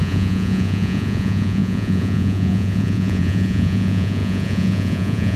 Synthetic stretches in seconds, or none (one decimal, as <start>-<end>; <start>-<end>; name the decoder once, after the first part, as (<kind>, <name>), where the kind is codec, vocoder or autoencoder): 0.0-5.4 (vocoder, Vocos)